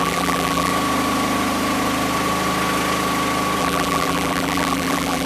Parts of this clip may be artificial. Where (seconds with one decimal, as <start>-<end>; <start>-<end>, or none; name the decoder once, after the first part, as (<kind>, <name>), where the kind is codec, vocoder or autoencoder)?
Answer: 0.0-0.7 (vocoder, BigVGAN v2); 3.6-5.3